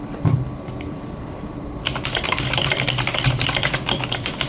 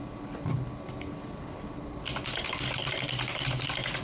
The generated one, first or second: first